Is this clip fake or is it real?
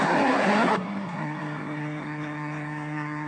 fake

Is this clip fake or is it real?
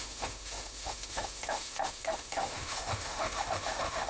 fake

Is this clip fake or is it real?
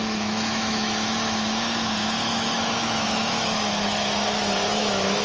fake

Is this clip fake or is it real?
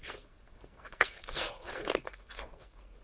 fake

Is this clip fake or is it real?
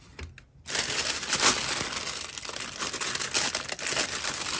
real